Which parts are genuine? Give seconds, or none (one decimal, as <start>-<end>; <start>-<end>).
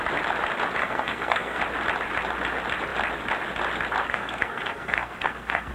0.0-0.8; 1.6-4.0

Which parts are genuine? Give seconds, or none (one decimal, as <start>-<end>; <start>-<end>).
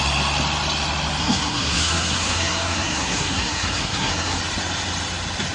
0.0-1.2; 4.4-5.5